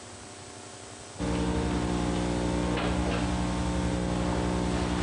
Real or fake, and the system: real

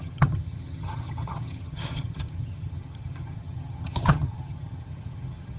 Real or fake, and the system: fake, vocoder, HiFi-GAN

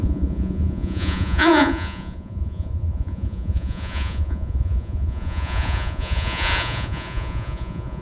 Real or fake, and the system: fake, vocoder, Vocos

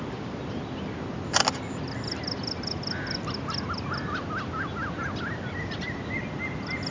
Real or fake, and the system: real